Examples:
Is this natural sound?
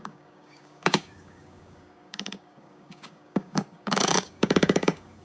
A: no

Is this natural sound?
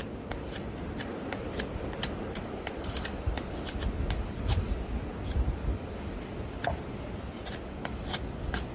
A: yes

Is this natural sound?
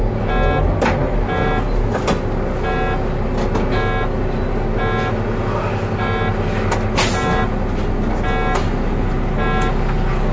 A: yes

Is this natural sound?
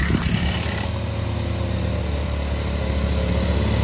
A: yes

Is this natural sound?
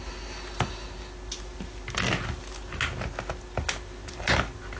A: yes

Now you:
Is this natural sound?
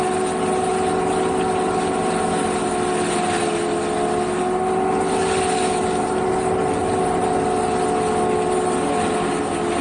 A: yes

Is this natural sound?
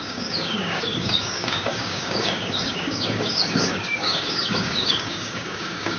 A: no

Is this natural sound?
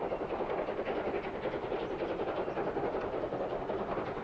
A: yes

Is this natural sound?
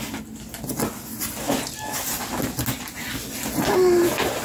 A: yes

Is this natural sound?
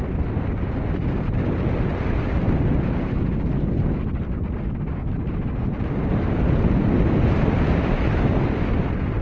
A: yes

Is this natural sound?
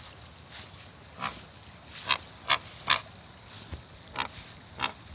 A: yes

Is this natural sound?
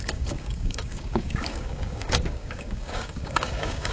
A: no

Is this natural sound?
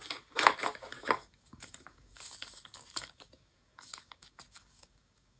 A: no